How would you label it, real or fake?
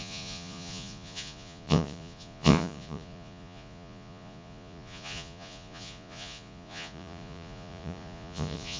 fake